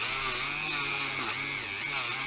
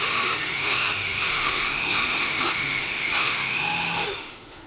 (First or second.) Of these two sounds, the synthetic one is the second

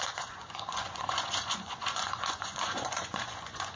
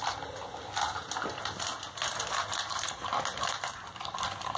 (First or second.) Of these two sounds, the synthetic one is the first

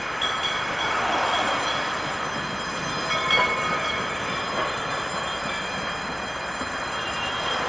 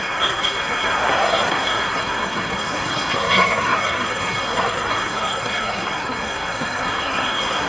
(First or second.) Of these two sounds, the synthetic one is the second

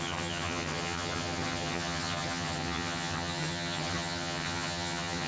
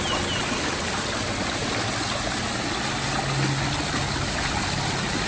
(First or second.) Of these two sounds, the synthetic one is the first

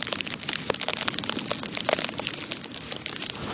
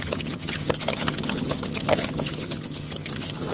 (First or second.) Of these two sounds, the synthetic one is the second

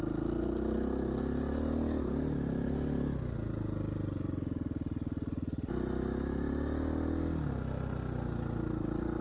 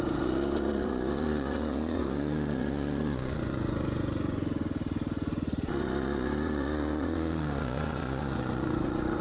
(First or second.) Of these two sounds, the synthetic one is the second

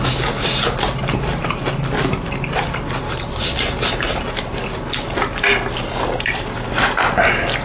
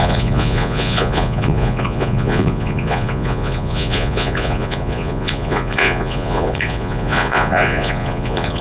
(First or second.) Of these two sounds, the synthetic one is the second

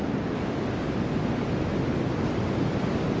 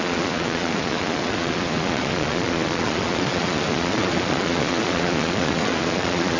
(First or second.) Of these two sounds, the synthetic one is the second